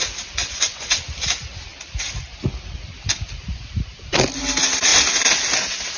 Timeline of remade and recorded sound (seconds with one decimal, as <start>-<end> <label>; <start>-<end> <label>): 0.0-0.4 recorded; 0.4-1.0 remade; 1.0-6.0 recorded